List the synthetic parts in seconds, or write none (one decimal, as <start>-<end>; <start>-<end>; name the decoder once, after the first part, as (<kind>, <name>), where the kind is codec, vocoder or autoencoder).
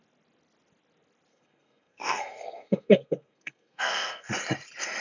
1.3-4.3 (codec, SNAC)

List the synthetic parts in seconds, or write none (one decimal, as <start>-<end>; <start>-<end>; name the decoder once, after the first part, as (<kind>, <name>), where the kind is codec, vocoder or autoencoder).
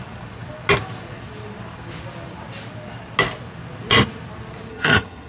4.7-5.3 (vocoder, HiFi-GAN)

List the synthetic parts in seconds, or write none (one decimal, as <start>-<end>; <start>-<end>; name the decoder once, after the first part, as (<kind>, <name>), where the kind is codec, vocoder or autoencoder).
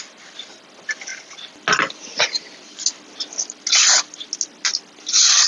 none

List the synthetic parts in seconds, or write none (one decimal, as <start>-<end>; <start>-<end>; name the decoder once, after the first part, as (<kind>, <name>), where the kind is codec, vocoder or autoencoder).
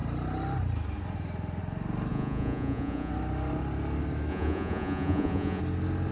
2.1-3.1 (vocoder, Vocos); 4.3-5.6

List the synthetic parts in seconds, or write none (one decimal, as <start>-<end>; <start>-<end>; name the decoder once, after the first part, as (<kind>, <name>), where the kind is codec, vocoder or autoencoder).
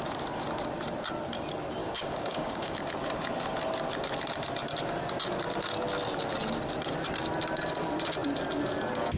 1.8-2.8 (codec, DAC)